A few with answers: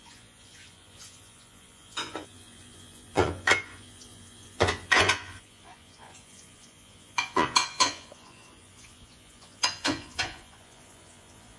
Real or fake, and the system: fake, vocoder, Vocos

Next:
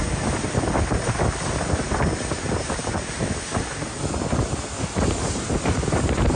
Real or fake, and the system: real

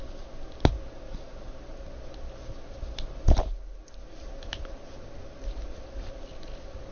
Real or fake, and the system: real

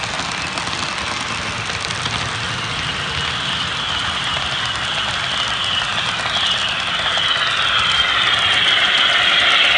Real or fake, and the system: real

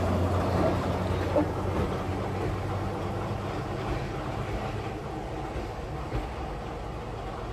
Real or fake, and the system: real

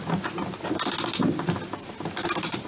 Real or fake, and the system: real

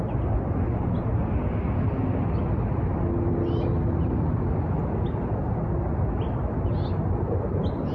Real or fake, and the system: real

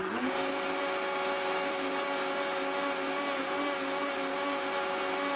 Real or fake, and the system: real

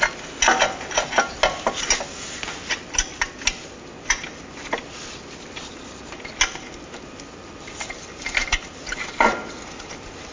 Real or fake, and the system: real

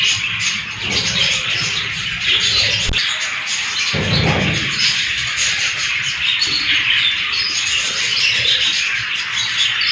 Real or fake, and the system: real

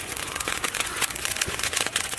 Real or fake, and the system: fake, vocoder, Vocos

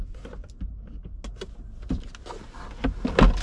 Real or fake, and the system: real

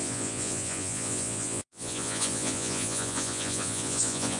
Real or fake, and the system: fake, vocoder, Vocos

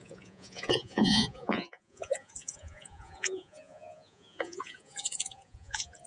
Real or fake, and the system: fake, vocoder, Vocos